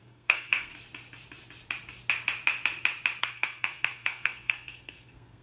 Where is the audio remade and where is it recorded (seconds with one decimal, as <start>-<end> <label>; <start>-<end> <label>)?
0.0-0.7 remade; 0.7-3.2 recorded; 3.2-5.4 remade